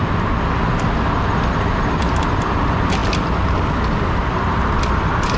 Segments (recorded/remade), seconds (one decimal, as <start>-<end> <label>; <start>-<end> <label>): 0.0-5.4 recorded